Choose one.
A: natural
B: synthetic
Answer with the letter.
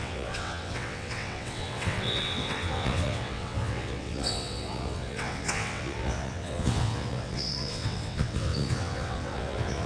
B